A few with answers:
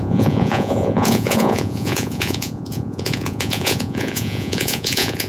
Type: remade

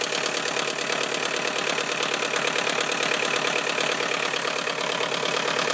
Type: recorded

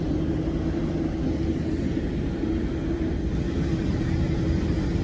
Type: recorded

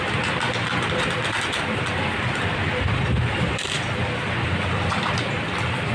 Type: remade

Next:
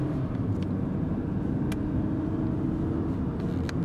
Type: recorded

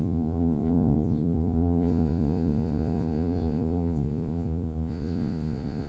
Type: remade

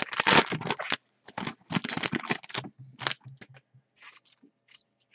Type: recorded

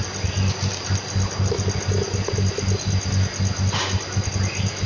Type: recorded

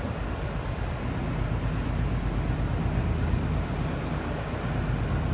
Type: recorded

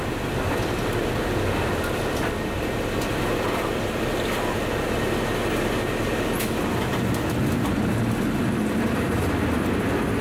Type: recorded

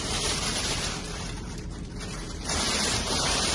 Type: remade